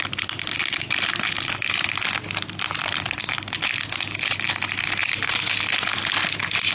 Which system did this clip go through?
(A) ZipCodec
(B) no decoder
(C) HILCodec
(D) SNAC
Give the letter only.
B